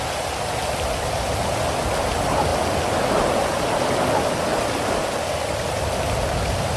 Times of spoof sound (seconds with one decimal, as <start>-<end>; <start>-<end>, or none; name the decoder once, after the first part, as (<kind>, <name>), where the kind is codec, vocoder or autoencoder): none